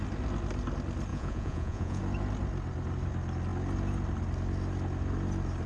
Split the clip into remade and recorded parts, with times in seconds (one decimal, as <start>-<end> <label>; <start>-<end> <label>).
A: 0.0-1.1 recorded; 1.1-2.0 remade; 2.0-5.7 recorded